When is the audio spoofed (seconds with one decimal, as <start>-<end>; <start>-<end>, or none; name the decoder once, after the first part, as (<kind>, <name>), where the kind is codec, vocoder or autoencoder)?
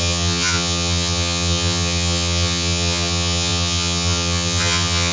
0.0-5.1 (vocoder, HiFi-GAN)